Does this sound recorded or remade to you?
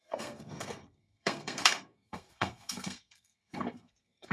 remade